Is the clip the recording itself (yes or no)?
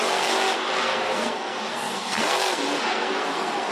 no